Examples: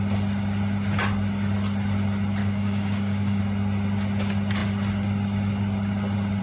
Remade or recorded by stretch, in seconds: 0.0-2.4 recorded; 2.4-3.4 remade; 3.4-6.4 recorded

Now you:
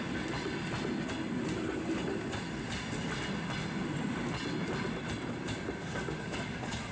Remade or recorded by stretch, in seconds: 0.0-5.8 recorded; 5.8-6.9 remade

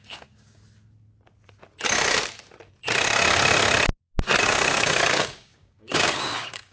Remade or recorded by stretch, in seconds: 0.0-0.6 remade; 0.6-4.4 recorded; 4.4-6.7 remade